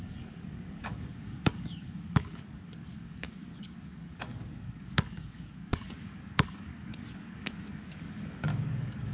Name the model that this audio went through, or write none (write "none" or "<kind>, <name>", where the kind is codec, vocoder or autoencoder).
codec, DAC